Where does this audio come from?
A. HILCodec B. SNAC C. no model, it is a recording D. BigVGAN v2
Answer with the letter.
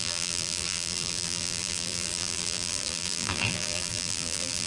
D